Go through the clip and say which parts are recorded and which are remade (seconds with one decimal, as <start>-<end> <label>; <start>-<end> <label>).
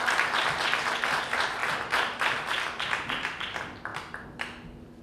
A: 0.0-5.0 recorded